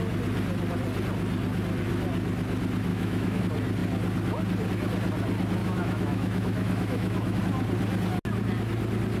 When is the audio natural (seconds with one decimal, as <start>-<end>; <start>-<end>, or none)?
0.0-2.9; 3.4-5.6; 7.4-9.2